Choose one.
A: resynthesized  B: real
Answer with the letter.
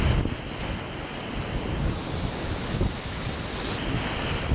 B